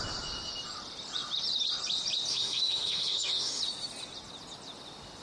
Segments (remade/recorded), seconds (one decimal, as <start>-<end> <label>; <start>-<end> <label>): 0.0-2.3 recorded; 2.3-3.6 remade; 3.6-5.2 recorded